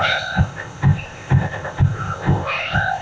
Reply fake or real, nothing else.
fake